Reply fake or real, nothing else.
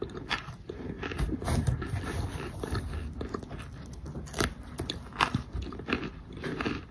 real